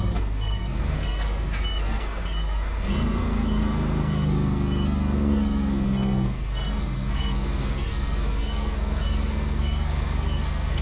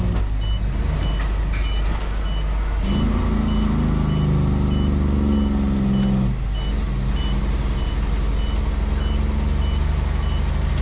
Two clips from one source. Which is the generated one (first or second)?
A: first